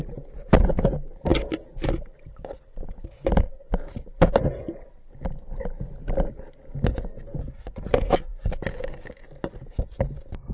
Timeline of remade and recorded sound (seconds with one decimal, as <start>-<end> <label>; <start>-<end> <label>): 0.0-8.3 recorded; 8.3-9.2 remade; 9.2-10.5 recorded